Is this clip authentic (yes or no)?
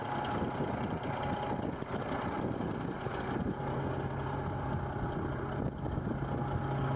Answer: yes